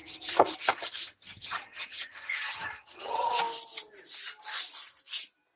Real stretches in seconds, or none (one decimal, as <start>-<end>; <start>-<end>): 3.4-5.6